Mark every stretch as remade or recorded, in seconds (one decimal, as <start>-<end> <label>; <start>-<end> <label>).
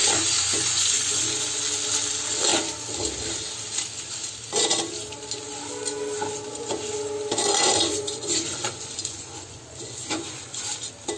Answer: 0.0-1.6 remade; 1.6-7.4 recorded; 7.4-10.6 remade; 10.6-11.2 recorded